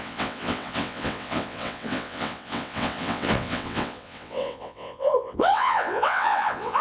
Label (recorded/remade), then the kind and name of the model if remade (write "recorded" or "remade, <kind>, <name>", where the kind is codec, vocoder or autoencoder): remade, vocoder, WaveNeXt